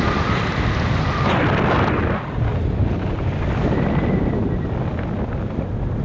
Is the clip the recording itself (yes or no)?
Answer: yes